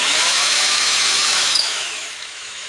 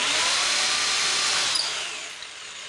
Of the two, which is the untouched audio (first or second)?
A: second